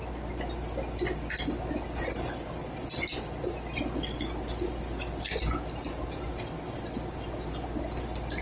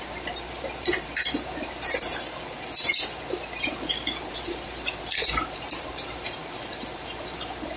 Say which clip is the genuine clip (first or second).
first